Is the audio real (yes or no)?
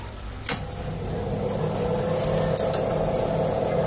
yes